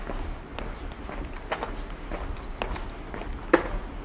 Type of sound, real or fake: real